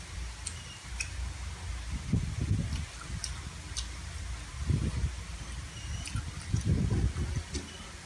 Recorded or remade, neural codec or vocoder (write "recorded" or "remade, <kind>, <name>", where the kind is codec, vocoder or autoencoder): recorded